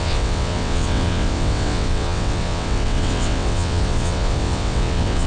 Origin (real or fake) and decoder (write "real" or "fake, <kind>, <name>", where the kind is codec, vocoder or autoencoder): fake, vocoder, WaveNeXt